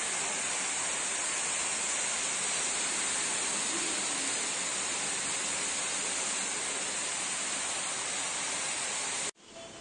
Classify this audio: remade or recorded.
recorded